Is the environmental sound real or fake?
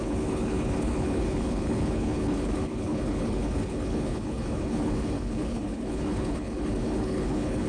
fake